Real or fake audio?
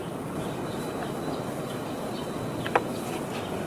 real